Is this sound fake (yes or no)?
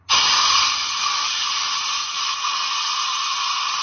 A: no